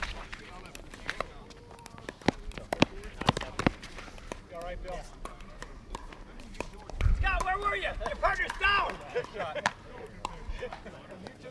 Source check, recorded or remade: remade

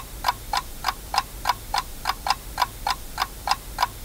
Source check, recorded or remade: remade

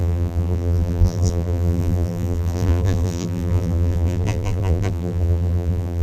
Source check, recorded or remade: remade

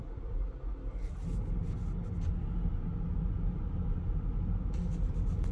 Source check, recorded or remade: recorded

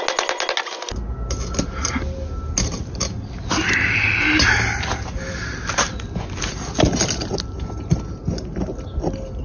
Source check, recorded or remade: recorded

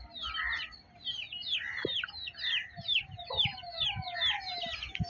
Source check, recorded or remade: recorded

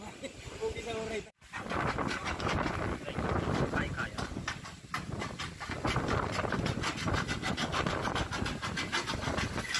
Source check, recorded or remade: recorded